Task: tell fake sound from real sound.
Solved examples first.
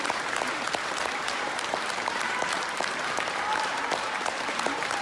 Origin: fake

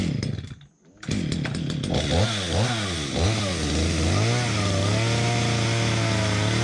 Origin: real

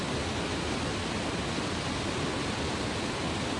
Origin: real